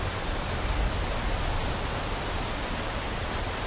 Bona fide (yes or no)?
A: yes